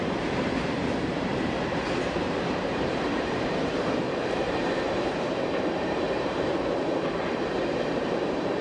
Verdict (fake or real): fake